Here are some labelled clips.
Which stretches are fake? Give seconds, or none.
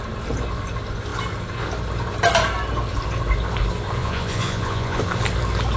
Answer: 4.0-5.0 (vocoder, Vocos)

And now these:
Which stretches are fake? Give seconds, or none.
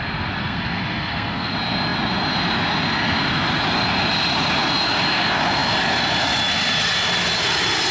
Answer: 0.4-1.5 (codec, SNAC)